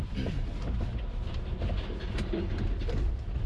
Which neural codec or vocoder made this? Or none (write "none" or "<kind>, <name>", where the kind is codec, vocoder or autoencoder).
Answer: none